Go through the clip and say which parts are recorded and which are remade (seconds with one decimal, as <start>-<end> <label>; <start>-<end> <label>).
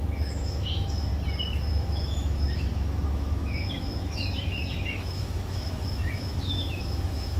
0.0-1.1 remade; 1.1-1.7 recorded; 1.7-7.4 remade